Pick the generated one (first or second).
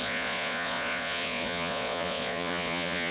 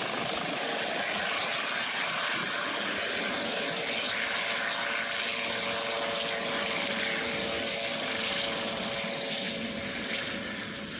first